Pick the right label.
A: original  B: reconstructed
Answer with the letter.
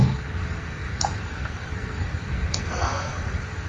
B